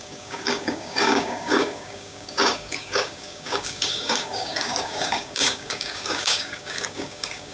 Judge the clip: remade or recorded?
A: remade